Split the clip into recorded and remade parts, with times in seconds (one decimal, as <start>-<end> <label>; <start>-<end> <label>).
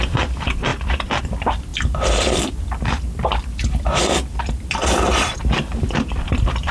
0.0-6.7 remade